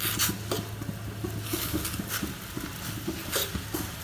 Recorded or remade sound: recorded